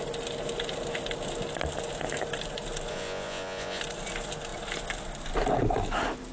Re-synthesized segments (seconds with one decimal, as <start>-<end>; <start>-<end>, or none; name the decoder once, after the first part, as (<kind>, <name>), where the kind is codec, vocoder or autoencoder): 2.9-3.8 (vocoder, Vocos)